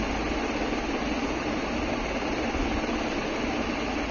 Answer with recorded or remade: recorded